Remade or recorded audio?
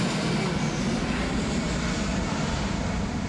recorded